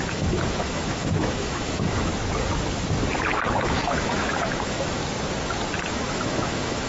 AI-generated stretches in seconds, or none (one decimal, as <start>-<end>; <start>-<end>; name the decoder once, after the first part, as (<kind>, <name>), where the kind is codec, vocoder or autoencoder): 0.0-2.1 (autoencoder, DAC-VAE); 3.6-5.0; 5.9-6.9